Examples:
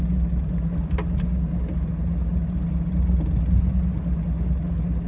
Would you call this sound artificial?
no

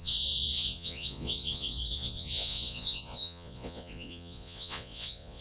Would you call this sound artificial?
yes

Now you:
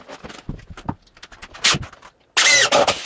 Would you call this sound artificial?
no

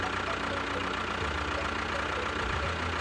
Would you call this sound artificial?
no